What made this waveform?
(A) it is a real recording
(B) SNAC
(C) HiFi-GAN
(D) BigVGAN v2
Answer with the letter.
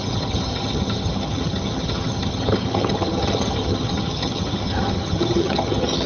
C